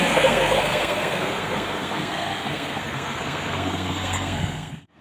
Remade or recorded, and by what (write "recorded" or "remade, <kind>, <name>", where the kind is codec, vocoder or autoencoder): remade, codec, SNAC